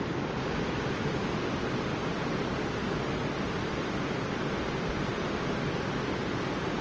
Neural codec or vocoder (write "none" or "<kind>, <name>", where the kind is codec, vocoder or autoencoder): none